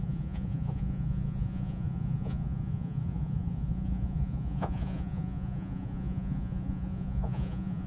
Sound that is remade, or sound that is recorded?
remade